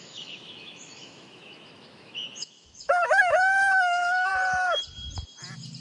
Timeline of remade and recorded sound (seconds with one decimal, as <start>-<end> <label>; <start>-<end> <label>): 0.0-4.3 remade; 4.3-5.8 recorded